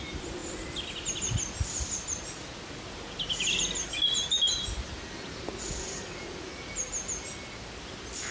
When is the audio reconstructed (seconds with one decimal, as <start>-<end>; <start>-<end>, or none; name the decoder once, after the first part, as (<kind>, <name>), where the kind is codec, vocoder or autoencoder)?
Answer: none